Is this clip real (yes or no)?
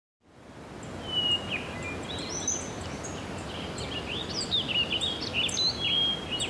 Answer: yes